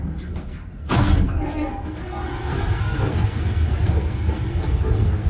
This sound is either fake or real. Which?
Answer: fake